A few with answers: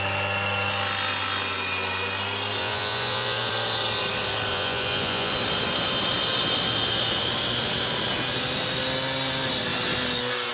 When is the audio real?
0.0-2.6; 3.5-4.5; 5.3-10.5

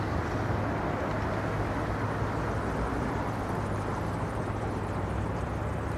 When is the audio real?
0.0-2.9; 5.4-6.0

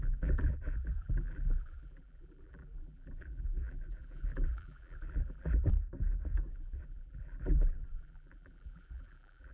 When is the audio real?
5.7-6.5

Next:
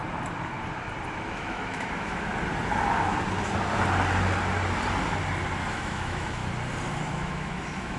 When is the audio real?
0.0-1.2; 2.3-5.7; 6.4-7.1